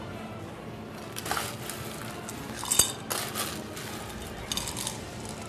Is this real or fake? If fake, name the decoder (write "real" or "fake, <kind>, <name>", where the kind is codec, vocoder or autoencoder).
real